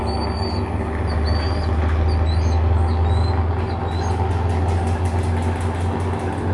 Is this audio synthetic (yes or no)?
no